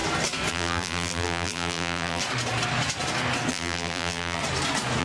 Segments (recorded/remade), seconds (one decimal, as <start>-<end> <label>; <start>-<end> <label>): 0.0-0.5 recorded; 0.5-2.2 remade; 2.2-3.5 recorded; 3.5-4.4 remade; 4.4-5.0 recorded